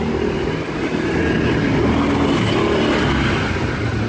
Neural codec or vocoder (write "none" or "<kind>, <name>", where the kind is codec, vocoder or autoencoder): none